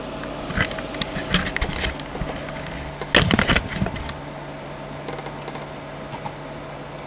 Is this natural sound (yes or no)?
yes